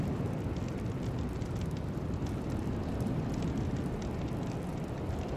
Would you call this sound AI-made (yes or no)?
no